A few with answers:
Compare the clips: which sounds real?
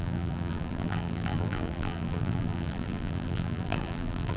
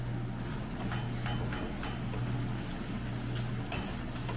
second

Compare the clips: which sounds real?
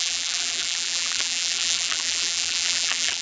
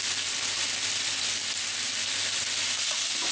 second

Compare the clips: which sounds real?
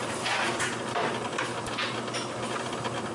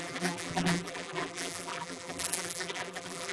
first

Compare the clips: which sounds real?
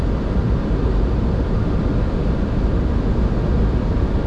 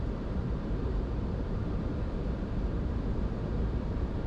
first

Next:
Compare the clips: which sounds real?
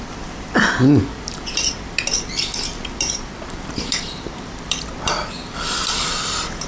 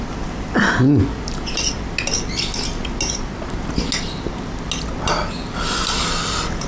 second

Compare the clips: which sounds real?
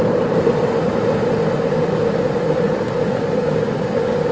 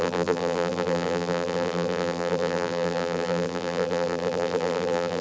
first